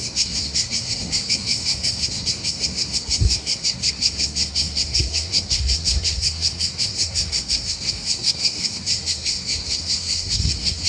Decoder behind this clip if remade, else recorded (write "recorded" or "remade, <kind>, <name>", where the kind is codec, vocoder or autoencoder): remade, codec, SNAC